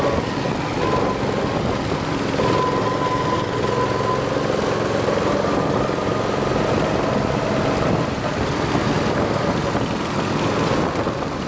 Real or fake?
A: real